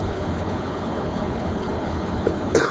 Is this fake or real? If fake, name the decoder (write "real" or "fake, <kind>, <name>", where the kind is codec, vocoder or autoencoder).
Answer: fake, codec, HILCodec